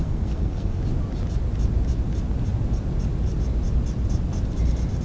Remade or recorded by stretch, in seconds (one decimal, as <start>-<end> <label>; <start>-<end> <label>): 0.0-0.8 remade; 0.8-5.0 recorded